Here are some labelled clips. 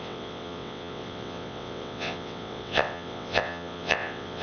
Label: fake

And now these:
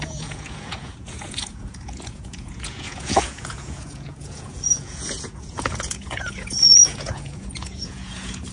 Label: fake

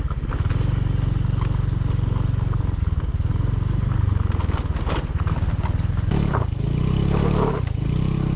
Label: real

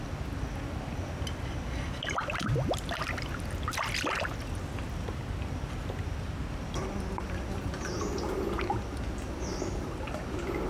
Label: real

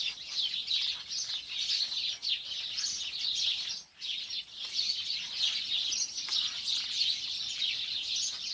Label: real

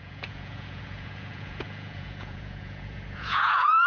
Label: fake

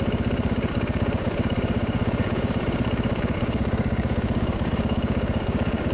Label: fake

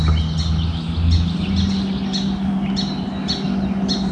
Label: real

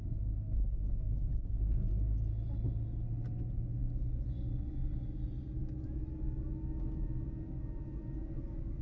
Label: real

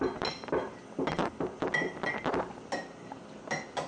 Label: real